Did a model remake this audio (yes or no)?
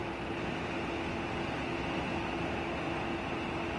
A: no